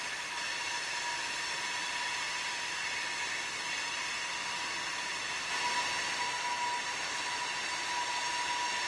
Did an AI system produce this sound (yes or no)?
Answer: no